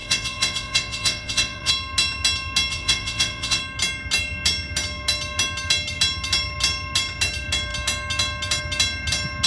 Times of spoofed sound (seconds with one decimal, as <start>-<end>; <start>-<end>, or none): 0.0-1.7; 2.7-3.6